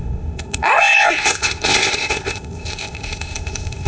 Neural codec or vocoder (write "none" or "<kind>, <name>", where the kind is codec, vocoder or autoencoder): codec, ZipCodec